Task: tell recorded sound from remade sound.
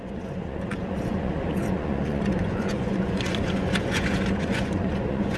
remade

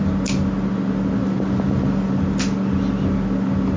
recorded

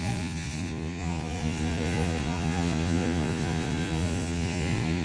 remade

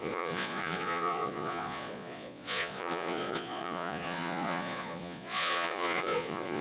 remade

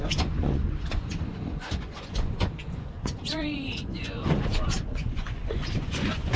remade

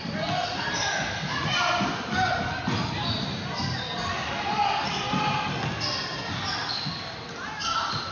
recorded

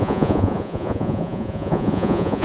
remade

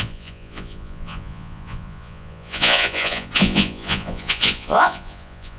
remade